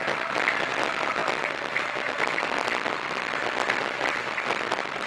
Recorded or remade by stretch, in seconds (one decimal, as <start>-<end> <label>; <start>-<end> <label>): 0.0-5.1 recorded